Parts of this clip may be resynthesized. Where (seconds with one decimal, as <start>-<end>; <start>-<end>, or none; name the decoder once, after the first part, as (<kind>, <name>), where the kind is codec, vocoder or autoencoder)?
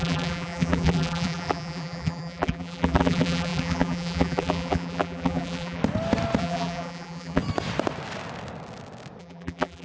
0.0-5.8 (vocoder, BigVGAN v2); 6.4-7.4; 9.2-9.8